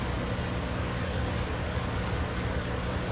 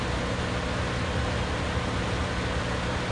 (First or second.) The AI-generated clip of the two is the first